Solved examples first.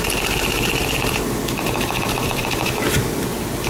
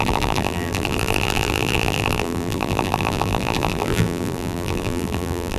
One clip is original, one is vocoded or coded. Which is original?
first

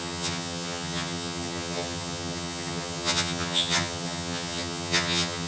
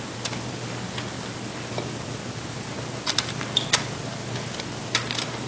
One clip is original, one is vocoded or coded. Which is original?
second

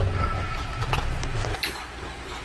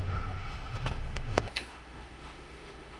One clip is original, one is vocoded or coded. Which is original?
first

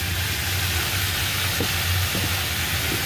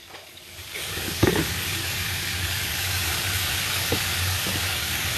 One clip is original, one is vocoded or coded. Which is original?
first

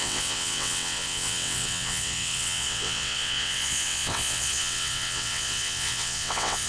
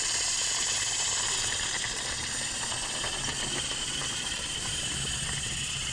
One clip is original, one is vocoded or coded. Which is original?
second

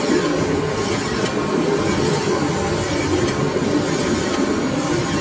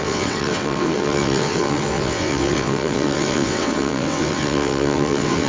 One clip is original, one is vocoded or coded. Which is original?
first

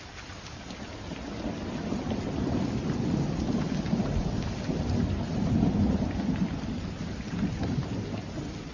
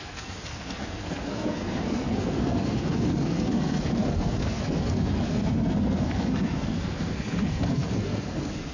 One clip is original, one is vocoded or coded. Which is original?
first